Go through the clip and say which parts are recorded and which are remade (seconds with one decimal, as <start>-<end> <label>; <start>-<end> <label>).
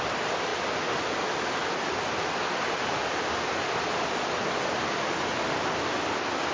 0.0-6.5 recorded